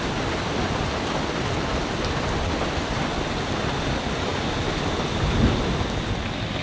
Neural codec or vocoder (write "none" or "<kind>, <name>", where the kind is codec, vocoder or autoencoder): none